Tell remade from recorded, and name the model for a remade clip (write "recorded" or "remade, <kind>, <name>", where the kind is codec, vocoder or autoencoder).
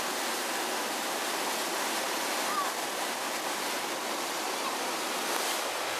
recorded